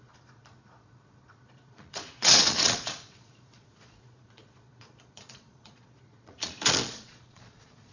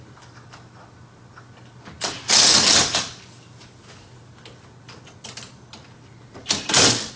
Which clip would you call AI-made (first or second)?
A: first